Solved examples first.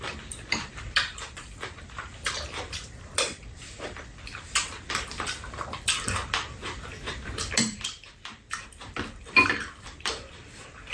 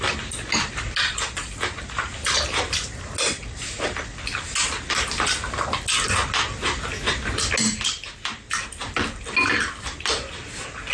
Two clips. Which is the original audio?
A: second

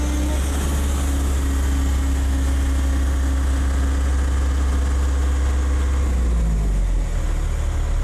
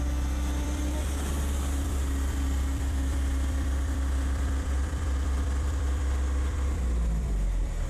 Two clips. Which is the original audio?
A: first